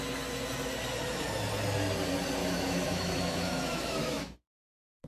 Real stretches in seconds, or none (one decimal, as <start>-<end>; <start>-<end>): 0.0-2.4